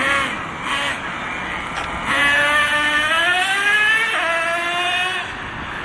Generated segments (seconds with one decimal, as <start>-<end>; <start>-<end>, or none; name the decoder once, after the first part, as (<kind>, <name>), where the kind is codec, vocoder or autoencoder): none